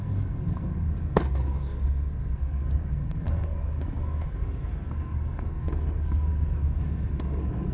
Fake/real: fake